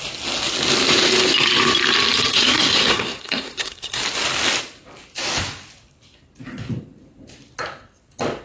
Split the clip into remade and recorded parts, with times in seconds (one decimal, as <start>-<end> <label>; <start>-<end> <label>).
0.0-2.3 recorded; 2.3-4.0 remade; 4.0-8.4 recorded